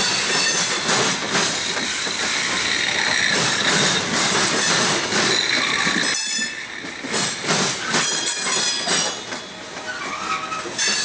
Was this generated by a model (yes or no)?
no